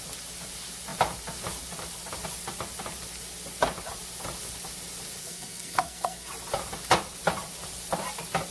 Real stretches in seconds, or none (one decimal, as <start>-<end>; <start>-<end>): 0.0-5.2; 6.3-8.5